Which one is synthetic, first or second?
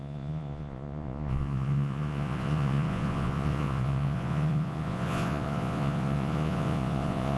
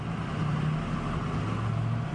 first